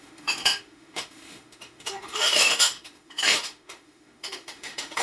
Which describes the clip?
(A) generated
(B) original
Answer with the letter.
A